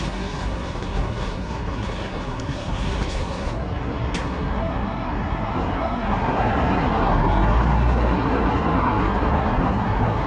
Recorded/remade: remade